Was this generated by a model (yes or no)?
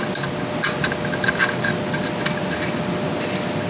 no